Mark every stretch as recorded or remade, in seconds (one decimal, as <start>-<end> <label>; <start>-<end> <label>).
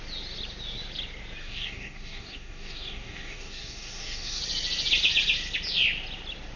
0.0-1.4 recorded; 1.4-4.4 remade; 4.4-6.6 recorded